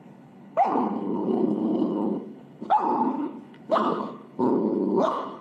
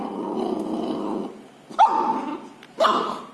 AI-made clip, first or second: first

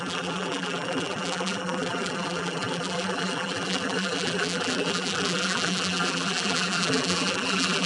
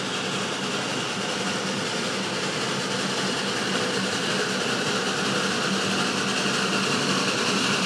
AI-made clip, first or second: first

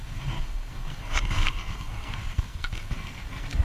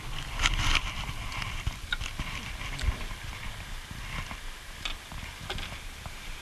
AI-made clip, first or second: first